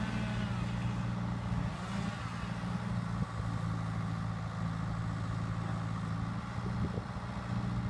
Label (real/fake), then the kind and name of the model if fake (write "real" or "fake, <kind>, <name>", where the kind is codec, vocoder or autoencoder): real